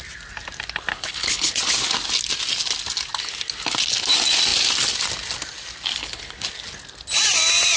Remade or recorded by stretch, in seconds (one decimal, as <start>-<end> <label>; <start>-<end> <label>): 0.0-0.9 recorded; 0.9-1.5 remade; 1.5-6.0 recorded; 6.0-6.5 remade; 6.5-7.8 recorded